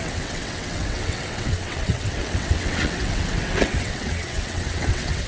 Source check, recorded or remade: remade